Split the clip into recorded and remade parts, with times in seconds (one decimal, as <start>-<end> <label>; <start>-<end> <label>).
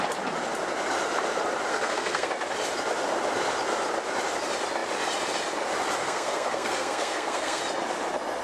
0.0-1.7 recorded; 1.7-2.3 remade; 2.3-6.0 recorded; 6.0-7.6 remade; 7.6-8.4 recorded